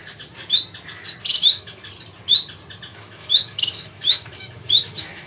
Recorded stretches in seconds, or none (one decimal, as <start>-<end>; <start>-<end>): 0.0-1.3; 1.8-2.9